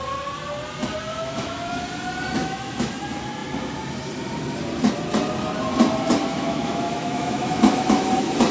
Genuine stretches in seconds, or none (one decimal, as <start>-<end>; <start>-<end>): 0.0-1.1; 1.7-2.4; 2.9-6.2; 8.1-8.5